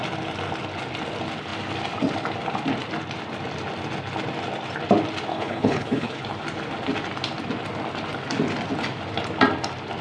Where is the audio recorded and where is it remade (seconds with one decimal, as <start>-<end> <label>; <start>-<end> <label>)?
0.0-5.3 recorded; 5.3-6.2 remade; 6.2-10.0 recorded